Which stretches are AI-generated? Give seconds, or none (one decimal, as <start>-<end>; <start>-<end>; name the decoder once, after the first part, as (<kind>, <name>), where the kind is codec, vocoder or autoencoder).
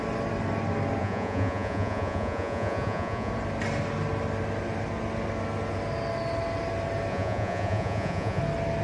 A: 1.0-3.3 (vocoder, Vocos); 7.1-8.4